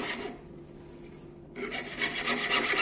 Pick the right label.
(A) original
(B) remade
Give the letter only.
A